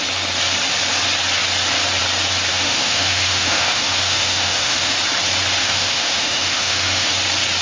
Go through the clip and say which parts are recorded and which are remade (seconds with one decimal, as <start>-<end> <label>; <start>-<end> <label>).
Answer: 0.0-2.5 recorded; 2.5-5.0 remade; 5.0-5.6 recorded; 5.6-7.1 remade; 7.1-7.6 recorded

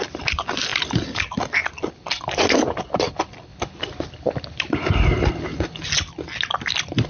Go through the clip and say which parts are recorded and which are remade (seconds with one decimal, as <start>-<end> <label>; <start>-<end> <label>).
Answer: 0.0-7.1 recorded